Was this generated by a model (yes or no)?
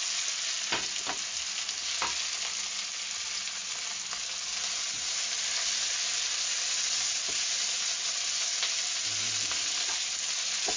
no